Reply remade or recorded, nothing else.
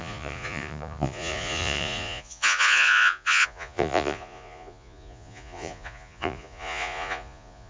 remade